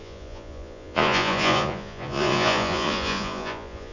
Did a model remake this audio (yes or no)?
yes